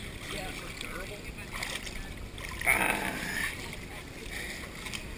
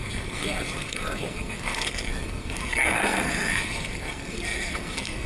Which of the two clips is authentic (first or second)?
first